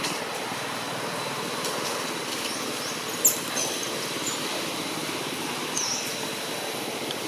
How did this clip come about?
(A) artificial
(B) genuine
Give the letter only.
B